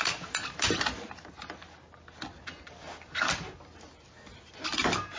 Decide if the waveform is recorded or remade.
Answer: recorded